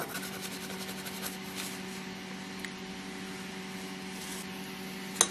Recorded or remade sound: recorded